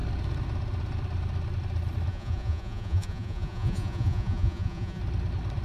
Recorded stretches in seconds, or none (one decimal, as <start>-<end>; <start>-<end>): 0.0-2.1; 5.0-5.6